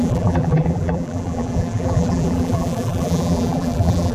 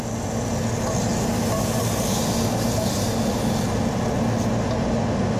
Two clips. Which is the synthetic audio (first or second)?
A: first